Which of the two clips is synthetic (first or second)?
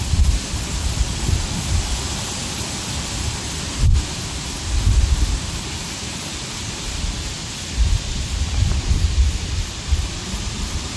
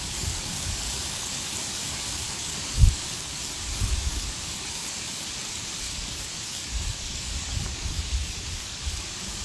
second